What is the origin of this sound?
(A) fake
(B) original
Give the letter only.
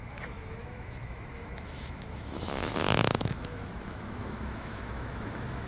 A